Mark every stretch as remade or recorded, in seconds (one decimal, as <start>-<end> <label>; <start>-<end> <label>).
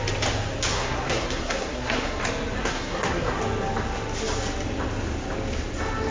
0.0-0.7 recorded; 0.7-2.2 remade; 2.2-2.6 recorded; 2.6-3.4 remade; 3.4-6.1 recorded